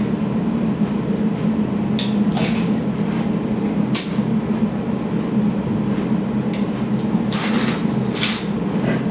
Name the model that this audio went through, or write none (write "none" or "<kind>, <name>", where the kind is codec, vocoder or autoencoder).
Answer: none